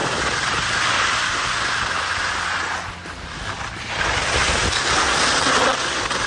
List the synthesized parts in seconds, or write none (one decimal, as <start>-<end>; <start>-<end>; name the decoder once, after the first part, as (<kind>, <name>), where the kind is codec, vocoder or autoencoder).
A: none